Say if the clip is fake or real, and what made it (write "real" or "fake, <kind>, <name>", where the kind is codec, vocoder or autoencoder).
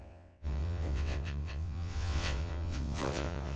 fake, vocoder, WaveNeXt